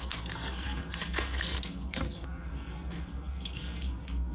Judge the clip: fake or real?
fake